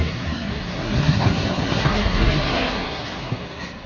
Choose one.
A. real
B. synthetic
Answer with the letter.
B